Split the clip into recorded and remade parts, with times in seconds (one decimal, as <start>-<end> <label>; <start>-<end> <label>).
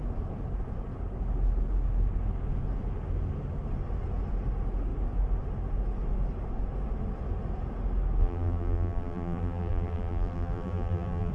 0.0-8.2 recorded; 8.2-11.3 remade